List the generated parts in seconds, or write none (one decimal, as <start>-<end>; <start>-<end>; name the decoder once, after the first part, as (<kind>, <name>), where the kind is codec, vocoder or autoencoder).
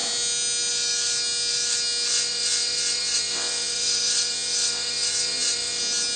2.1-5.8 (vocoder, WaveNeXt)